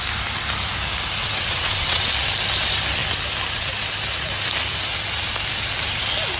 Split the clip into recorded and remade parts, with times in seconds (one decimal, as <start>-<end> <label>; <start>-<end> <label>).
0.0-1.2 recorded; 1.2-2.1 remade; 2.1-6.4 recorded